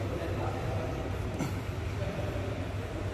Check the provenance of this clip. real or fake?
real